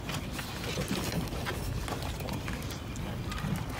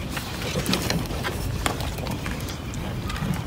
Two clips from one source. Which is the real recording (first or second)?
first